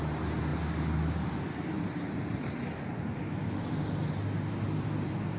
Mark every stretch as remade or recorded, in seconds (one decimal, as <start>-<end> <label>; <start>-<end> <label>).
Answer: 0.0-5.4 recorded